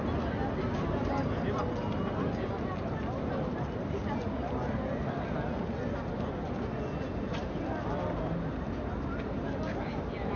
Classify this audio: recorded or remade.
recorded